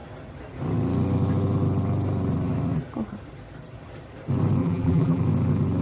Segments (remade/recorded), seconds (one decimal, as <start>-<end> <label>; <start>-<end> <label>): 0.0-4.6 recorded; 4.6-5.2 remade; 5.2-5.8 recorded

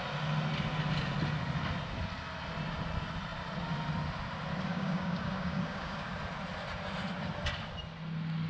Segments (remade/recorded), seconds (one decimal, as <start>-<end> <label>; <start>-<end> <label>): 0.0-4.7 recorded; 4.7-6.1 remade; 6.1-8.5 recorded

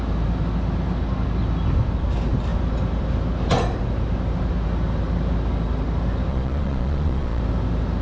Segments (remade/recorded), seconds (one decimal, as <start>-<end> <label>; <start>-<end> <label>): 0.0-6.3 recorded; 6.3-7.4 remade; 7.4-8.0 recorded

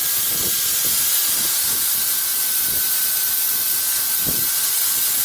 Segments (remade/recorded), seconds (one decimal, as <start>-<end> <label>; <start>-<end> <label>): 0.0-5.2 recorded